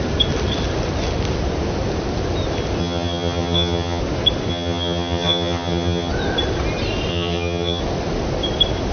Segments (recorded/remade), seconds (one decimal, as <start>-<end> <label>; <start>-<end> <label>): 0.0-2.8 recorded; 2.8-4.0 remade; 4.0-4.5 recorded; 4.5-6.1 remade; 6.1-7.1 recorded; 7.1-7.8 remade; 7.8-8.9 recorded